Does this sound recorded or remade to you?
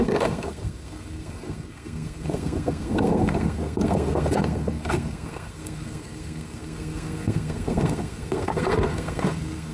remade